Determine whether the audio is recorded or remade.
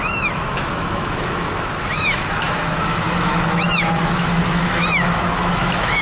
remade